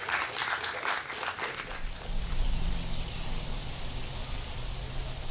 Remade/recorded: recorded